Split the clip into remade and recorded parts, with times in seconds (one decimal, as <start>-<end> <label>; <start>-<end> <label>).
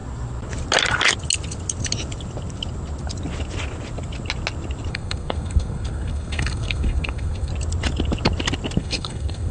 0.0-4.9 recorded; 4.9-7.5 remade; 7.5-8.8 recorded; 8.8-9.5 remade